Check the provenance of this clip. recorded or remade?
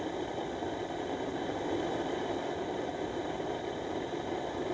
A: recorded